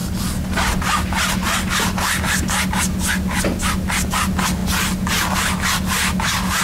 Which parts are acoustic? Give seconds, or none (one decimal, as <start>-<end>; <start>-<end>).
0.0-6.6

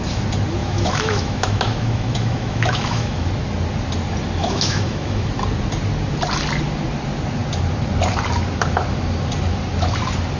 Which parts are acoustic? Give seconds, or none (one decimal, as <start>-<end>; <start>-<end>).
0.0-0.6; 3.3-4.4; 5.3-10.4

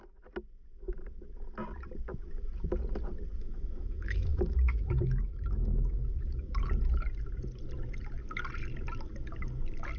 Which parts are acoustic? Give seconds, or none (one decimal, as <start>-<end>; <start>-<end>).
0.0-3.4; 6.6-10.0

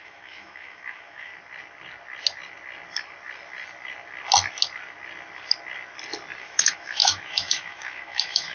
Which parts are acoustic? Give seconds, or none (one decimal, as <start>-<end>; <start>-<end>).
1.3-6.4

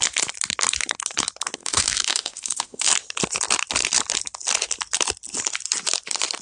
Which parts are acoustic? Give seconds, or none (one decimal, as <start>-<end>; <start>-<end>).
0.0-1.6; 2.9-6.4

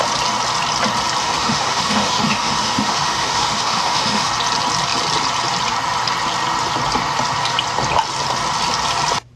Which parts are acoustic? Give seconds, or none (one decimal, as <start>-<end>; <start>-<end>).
0.0-1.2; 4.3-9.4